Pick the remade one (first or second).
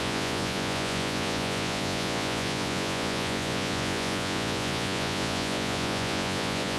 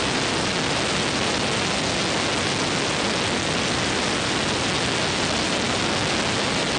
first